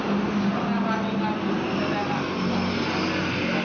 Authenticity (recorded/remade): recorded